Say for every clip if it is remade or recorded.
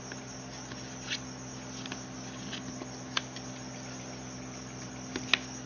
recorded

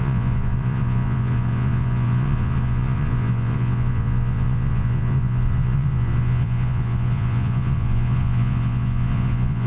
remade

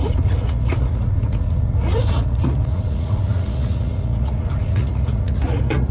remade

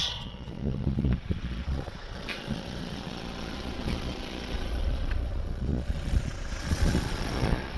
remade